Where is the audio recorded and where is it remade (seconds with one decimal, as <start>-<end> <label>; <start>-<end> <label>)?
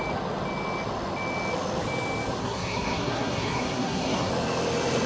0.0-2.4 recorded; 2.4-4.3 remade; 4.3-5.1 recorded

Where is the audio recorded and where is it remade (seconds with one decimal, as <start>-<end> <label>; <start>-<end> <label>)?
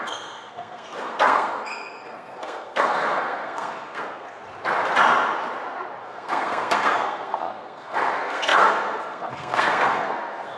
0.0-4.4 remade; 4.4-6.0 recorded; 6.0-10.6 remade